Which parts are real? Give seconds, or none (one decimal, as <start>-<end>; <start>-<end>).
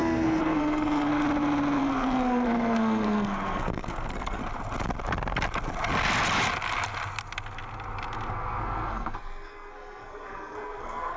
1.1-1.8; 4.4-8.3